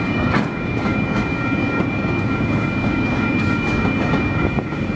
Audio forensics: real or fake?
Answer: fake